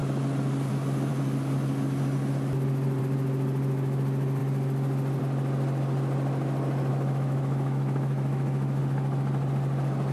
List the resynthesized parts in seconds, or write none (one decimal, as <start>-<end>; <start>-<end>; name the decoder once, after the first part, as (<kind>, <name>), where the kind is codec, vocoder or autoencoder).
6.9-8.8 (autoencoder, DAC-VAE)